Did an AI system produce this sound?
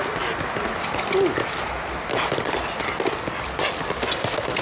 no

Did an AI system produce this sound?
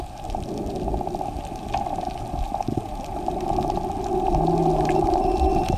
no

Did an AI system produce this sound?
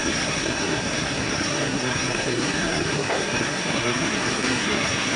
yes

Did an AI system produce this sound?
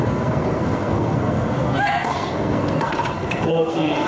yes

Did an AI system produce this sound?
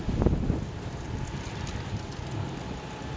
no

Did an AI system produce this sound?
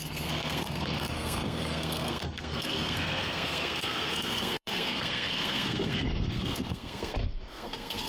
yes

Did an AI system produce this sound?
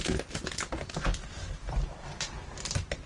no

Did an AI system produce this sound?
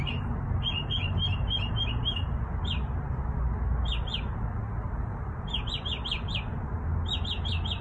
no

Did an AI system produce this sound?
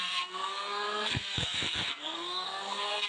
yes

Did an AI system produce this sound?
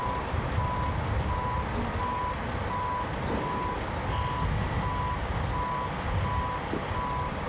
no